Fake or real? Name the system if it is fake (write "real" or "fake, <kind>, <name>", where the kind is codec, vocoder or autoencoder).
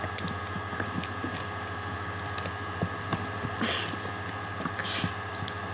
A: real